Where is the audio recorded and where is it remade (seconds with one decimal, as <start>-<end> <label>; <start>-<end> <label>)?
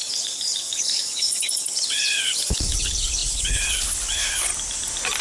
0.0-4.5 remade; 4.5-5.2 recorded